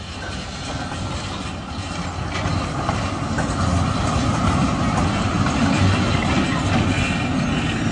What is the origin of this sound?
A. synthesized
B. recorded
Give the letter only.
B